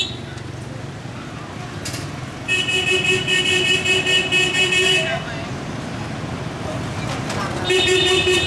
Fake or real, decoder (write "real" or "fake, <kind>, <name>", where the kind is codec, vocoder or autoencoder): real